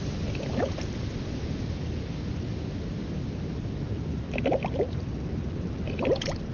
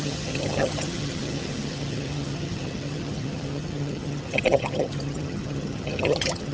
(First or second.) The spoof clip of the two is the second